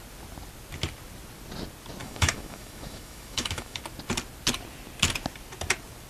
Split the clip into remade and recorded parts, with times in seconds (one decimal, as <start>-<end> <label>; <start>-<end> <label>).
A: 0.0-2.0 recorded; 2.0-3.8 remade; 3.8-6.1 recorded